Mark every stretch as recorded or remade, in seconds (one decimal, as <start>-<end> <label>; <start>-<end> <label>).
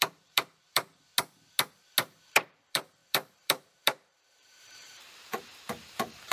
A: 0.0-1.1 remade; 1.1-2.2 recorded; 2.2-6.3 remade